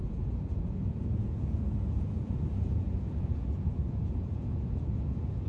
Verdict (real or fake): fake